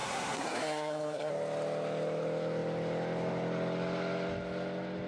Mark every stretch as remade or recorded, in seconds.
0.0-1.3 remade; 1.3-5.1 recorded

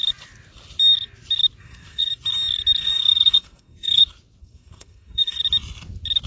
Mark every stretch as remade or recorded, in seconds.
0.0-1.6 recorded; 1.6-2.1 remade; 2.1-2.8 recorded; 2.8-4.0 remade; 4.0-4.4 recorded; 4.4-5.4 remade; 5.4-6.3 recorded

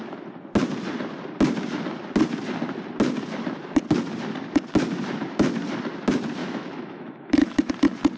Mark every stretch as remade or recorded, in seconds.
0.0-6.4 recorded; 6.4-7.7 remade; 7.7-8.2 recorded